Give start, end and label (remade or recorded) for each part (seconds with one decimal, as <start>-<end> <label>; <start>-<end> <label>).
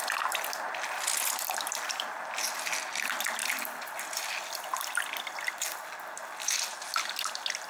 0.0-3.4 recorded; 3.4-5.8 remade; 5.8-7.7 recorded